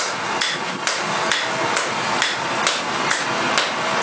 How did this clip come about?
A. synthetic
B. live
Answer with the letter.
B